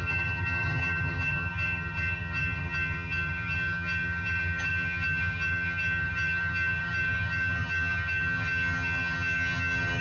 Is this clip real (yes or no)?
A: no